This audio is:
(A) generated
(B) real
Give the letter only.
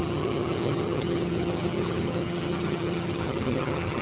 A